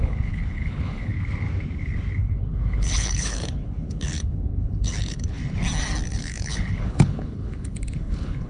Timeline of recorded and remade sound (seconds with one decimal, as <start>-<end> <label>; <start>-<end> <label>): 0.0-1.1 remade; 1.1-2.2 recorded; 2.2-5.4 remade; 5.4-6.1 recorded; 6.1-8.5 remade